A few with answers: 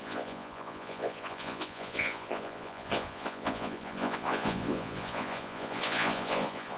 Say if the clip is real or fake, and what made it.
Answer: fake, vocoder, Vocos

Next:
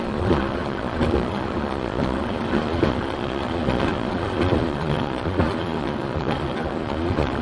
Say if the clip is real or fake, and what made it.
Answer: fake, vocoder, Vocos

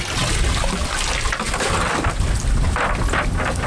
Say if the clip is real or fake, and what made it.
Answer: real